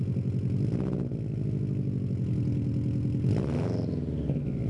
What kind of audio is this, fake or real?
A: real